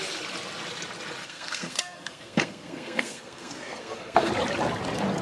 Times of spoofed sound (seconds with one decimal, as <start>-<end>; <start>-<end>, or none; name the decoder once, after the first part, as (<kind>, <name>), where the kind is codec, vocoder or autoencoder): 1.2-4.3 (codec, SNAC)